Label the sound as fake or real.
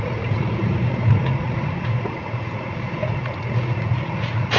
fake